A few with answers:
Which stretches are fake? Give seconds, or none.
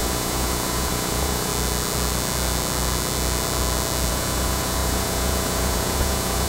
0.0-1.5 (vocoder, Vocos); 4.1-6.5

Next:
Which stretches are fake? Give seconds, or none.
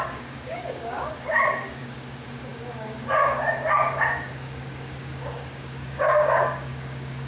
0.0-7.3 (codec, DAC)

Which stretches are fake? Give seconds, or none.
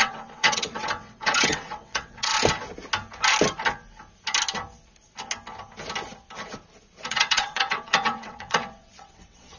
0.0-2.3 (vocoder, WaveNeXt); 7.1-9.6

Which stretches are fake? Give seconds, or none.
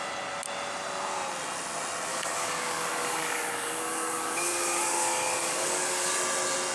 2.1-6.1 (codec, DAC)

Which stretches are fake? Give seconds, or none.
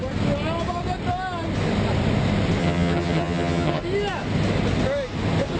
2.6-3.8 (vocoder, HiFi-GAN)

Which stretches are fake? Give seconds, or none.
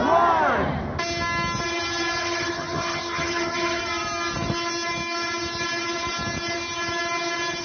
2.2-3.8 (vocoder, HiFi-GAN)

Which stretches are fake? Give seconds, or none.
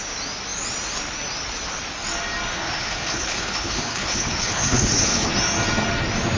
2.5-5.3 (codec, HILCodec)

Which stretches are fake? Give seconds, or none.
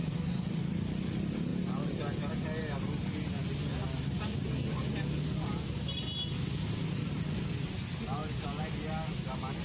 none